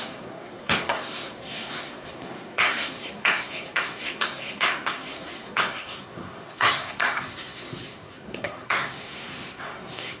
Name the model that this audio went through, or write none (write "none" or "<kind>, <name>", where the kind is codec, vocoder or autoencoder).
codec, SNAC